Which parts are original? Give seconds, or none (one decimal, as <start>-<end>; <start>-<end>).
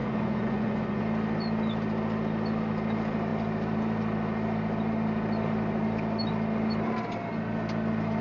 1.0-8.2